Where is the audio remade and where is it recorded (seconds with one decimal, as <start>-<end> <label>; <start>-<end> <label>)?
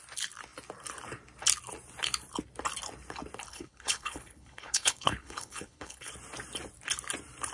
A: 0.0-3.5 recorded; 3.5-6.1 remade; 6.1-7.5 recorded